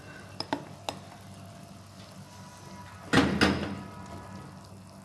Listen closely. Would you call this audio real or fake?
real